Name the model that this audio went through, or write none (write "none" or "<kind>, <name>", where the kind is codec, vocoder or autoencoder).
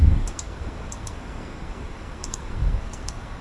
codec, SNAC